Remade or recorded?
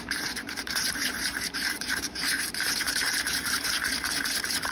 remade